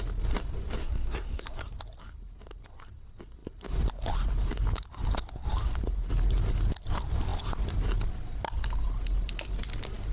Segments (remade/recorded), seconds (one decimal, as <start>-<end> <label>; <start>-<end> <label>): 0.0-0.8 recorded; 0.8-1.7 remade; 1.7-10.1 recorded